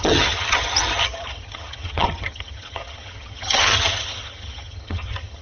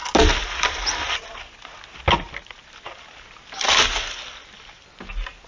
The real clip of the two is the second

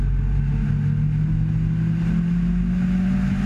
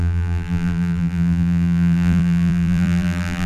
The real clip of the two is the first